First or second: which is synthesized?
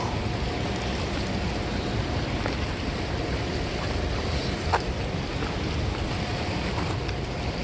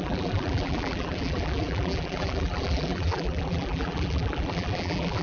second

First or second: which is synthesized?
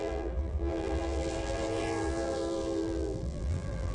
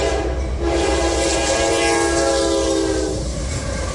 first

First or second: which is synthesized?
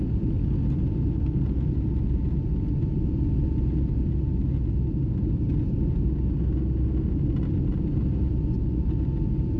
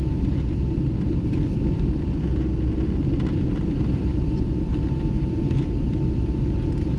second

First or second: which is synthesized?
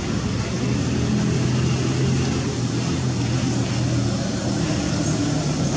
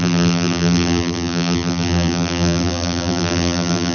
second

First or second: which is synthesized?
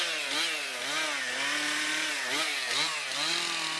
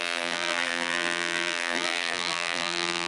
second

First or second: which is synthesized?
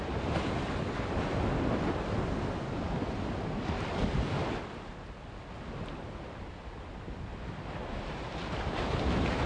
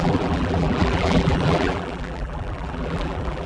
second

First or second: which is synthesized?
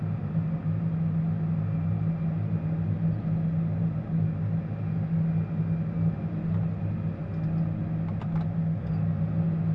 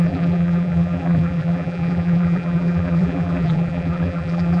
second